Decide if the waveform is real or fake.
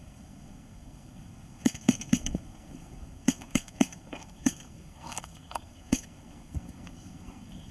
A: fake